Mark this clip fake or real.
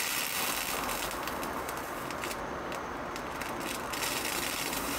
real